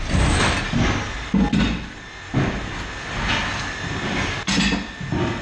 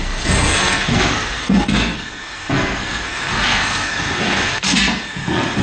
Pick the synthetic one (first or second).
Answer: second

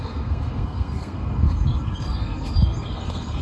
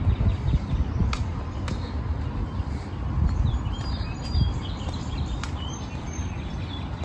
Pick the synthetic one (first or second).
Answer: first